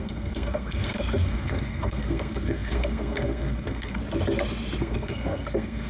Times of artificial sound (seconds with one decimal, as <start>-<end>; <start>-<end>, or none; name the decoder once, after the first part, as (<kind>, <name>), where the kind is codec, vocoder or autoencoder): 0.0-4.0 (codec, SNAC); 4.8-5.9